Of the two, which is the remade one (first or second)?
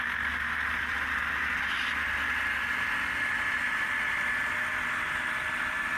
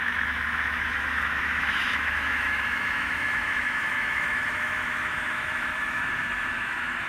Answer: second